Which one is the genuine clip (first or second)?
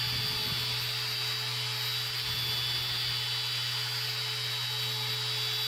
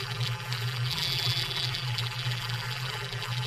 first